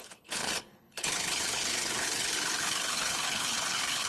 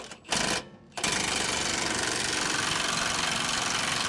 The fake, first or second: first